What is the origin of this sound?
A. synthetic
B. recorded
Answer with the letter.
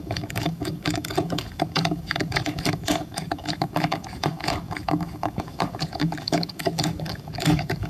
A